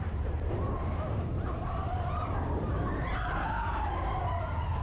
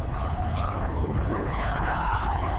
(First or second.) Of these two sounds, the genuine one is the first